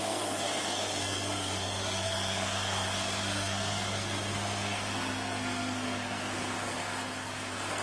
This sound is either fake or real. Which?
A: fake